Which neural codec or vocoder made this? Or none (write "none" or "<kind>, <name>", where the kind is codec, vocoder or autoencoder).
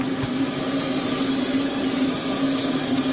none